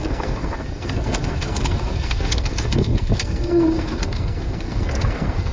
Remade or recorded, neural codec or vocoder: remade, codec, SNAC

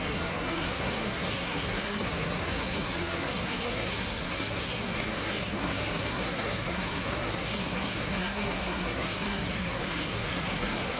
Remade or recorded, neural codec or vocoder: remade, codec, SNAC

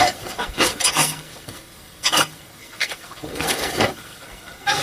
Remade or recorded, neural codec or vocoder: remade, codec, SNAC